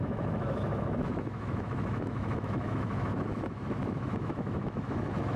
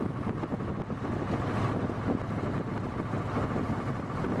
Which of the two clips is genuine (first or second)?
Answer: second